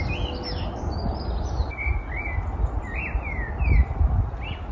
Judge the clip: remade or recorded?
recorded